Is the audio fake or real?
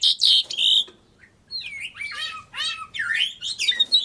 fake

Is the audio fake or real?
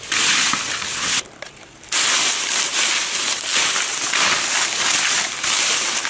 real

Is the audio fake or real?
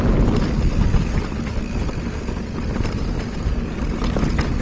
real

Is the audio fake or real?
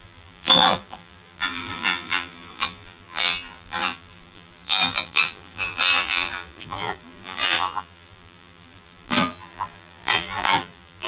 fake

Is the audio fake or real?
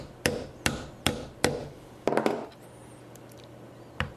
real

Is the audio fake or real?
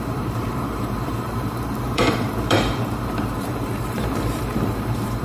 fake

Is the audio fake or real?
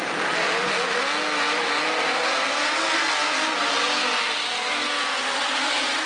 real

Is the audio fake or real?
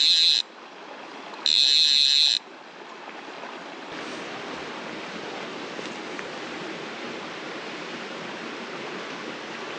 real